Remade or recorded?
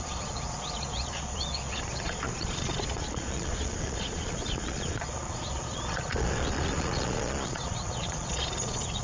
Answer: remade